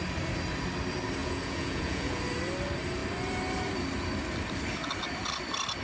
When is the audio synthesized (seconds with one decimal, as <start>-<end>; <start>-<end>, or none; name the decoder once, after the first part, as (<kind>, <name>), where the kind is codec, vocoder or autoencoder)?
1.2-2.2 (vocoder, Vocos)